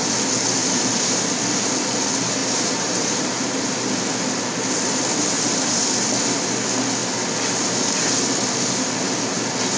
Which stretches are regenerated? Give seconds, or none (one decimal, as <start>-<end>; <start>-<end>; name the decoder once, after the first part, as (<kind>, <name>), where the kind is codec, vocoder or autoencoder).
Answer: 0.6-1.2 (vocoder, BigVGAN v2); 2.4-4.0